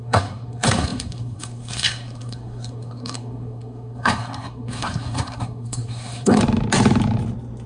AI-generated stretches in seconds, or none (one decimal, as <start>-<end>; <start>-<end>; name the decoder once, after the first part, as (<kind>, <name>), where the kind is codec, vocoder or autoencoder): 0.0-6.4 (codec, SNAC)